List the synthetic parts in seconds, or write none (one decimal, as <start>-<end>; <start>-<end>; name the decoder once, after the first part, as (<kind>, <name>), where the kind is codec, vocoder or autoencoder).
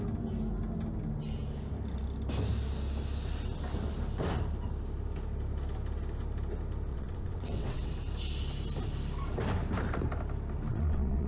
6.9-7.9 (vocoder, WaveNeXt); 10.7-11.3